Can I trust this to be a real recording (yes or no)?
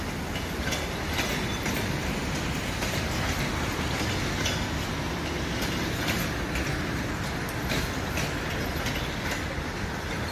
yes